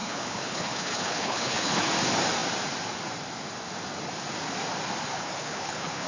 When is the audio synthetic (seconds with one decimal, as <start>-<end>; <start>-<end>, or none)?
0.0-1.9; 5.1-6.1